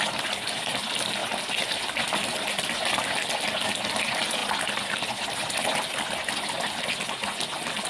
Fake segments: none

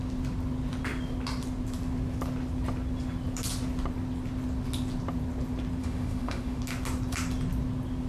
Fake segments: 5.8-6.6 (autoencoder, DAC-VAE)

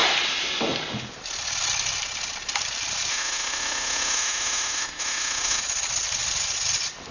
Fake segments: 3.1-5.6 (autoencoder, DAC-VAE)

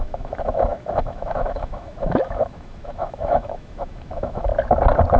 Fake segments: 0.0-4.5 (autoencoder, DAC-VAE)

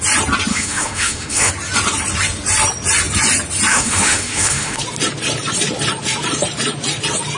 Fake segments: 0.5-1.5 (autoencoder, DAC-VAE); 3.7-4.8